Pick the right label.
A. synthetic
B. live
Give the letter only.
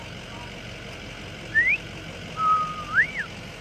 B